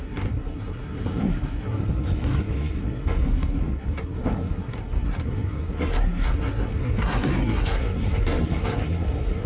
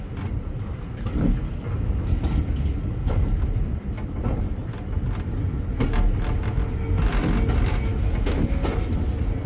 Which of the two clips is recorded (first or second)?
second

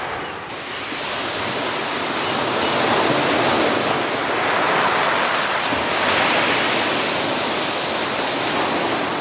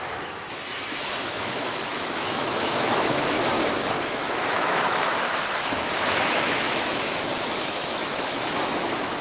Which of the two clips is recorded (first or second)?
first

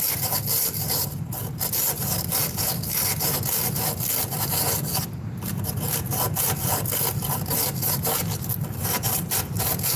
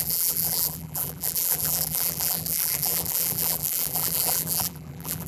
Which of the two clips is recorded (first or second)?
first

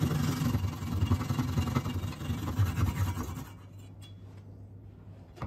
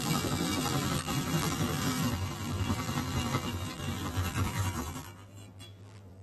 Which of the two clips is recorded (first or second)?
first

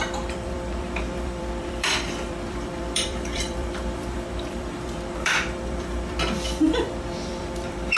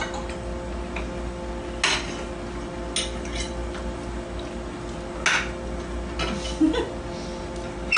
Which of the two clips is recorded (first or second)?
second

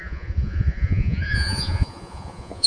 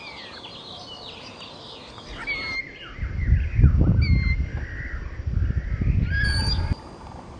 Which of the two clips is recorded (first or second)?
second